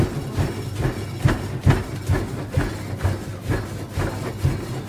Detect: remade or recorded recorded